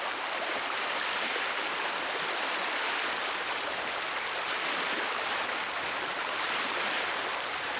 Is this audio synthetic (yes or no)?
no